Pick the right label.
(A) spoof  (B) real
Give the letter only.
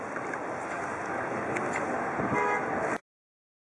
B